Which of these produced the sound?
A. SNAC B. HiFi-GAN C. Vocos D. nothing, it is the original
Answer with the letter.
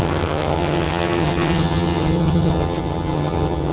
B